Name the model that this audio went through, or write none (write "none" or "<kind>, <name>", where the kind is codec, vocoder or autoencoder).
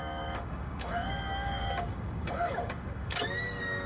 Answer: codec, DAC